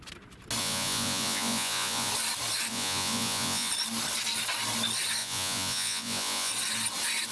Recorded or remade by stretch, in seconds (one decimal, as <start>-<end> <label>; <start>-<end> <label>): 0.0-0.6 recorded; 0.6-2.1 remade; 2.1-2.7 recorded; 2.7-3.7 remade; 3.7-5.2 recorded; 5.2-6.5 remade; 6.5-7.3 recorded